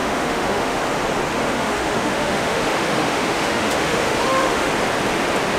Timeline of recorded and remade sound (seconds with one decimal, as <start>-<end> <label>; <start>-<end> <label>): 0.0-0.8 remade; 0.8-1.3 recorded; 1.3-4.7 remade; 4.7-5.6 recorded